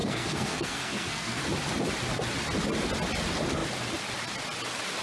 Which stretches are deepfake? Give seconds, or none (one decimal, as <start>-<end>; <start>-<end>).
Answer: 0.0-1.4

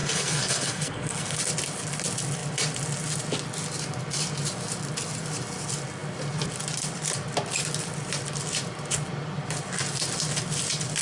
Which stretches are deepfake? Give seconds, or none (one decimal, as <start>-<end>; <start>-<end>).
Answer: 0.0-1.4

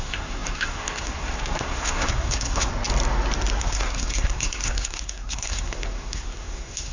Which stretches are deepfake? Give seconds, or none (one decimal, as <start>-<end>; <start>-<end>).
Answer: 0.0-2.7; 3.6-6.9